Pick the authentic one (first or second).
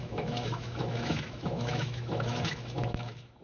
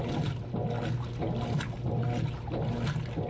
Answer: second